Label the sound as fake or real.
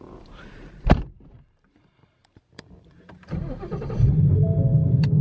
fake